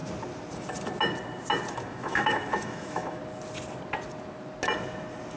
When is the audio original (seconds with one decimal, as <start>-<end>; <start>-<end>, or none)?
0.0-1.7; 3.2-5.4